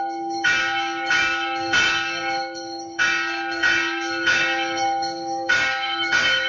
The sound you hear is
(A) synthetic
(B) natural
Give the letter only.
A